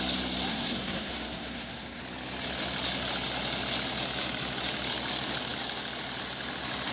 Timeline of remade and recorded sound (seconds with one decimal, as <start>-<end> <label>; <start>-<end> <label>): 0.0-0.5 recorded; 0.5-2.0 remade; 2.0-6.9 recorded